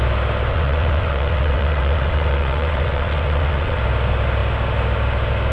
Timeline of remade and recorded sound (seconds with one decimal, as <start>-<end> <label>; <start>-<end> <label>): 0.0-0.5 recorded; 0.5-3.8 remade; 3.8-5.5 recorded